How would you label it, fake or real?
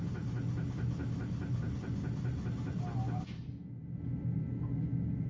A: real